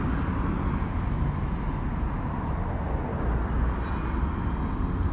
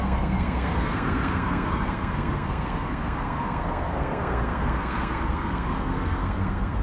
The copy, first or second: second